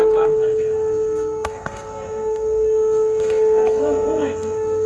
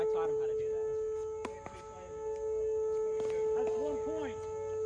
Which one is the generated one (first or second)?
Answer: first